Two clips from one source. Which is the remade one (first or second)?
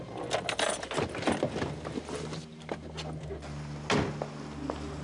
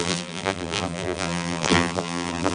second